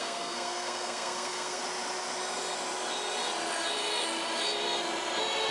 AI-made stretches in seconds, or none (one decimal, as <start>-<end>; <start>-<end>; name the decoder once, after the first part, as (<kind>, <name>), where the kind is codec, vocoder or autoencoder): 0.0-1.6 (codec, SNAC)